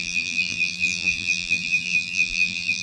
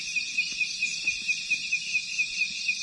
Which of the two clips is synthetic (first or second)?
first